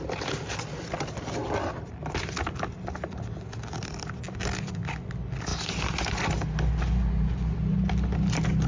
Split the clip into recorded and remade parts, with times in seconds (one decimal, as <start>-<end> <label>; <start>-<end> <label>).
0.0-8.7 recorded